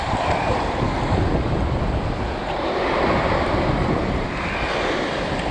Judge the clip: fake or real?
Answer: real